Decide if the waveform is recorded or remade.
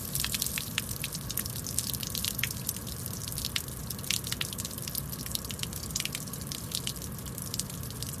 recorded